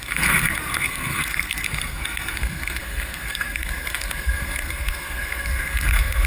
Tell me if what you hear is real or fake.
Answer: fake